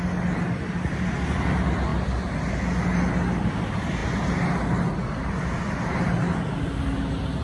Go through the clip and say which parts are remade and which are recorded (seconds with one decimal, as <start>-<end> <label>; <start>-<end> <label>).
0.0-7.4 recorded